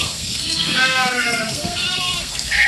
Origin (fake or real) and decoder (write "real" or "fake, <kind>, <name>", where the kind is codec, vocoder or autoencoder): fake, codec, SNAC